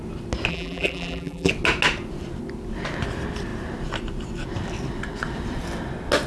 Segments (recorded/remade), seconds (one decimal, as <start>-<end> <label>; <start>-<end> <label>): 0.0-0.5 recorded; 0.5-1.5 remade; 1.5-6.3 recorded